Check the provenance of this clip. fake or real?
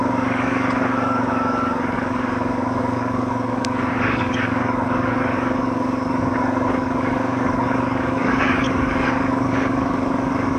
fake